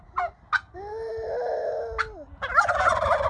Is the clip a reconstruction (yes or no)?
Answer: no